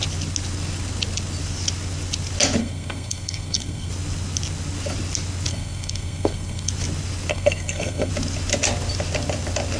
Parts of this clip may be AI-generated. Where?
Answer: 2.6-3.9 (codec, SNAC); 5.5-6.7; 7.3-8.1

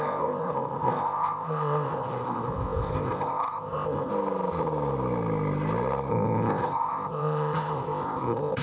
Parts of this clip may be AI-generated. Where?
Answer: 0.0-4.1 (codec, ZipCodec); 6.1-8.6